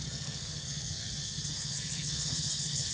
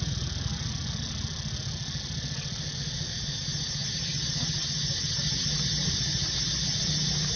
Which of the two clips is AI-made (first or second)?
first